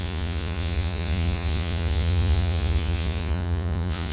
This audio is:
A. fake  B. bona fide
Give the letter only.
A